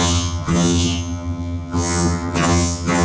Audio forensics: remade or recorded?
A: remade